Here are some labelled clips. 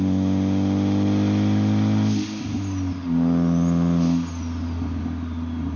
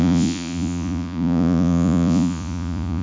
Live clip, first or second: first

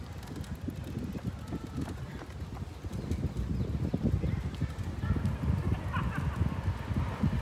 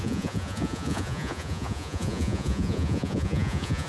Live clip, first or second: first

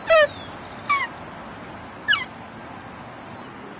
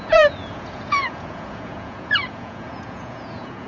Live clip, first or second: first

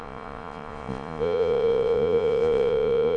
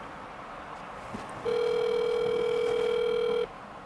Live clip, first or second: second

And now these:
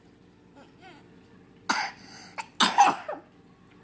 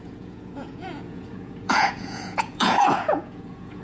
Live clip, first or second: first